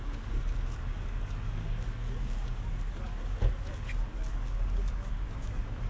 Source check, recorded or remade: remade